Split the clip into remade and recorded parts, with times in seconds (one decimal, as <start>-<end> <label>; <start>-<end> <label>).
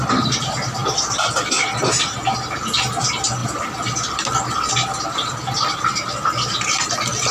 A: 0.0-7.3 recorded